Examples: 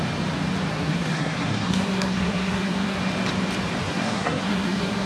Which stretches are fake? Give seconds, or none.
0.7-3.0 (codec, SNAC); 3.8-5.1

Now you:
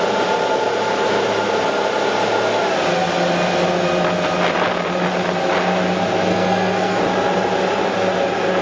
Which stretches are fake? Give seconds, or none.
6.3-7.0 (codec, SNAC)

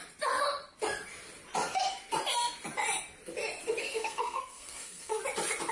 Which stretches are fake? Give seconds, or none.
3.8-5.2 (codec, SNAC)